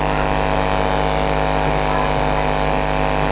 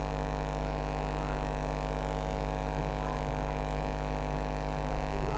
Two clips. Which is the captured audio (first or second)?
first